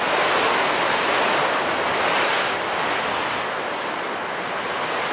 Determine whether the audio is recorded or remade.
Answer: recorded